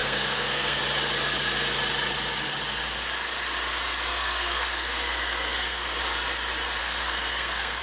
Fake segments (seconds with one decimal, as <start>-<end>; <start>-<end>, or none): 0.0-0.8; 4.1-6.0; 6.8-7.8

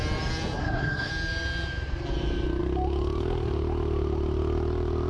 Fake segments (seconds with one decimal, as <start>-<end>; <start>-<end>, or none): 0.6-1.1